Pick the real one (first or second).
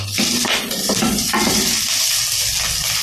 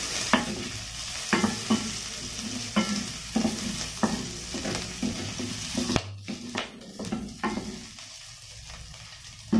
second